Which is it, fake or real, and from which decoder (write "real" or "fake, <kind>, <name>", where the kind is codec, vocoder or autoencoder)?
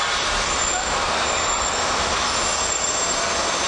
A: real